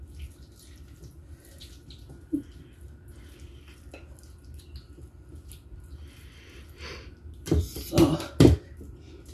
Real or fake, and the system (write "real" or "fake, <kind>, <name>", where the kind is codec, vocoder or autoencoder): real